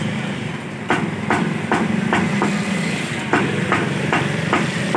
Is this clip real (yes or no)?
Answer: yes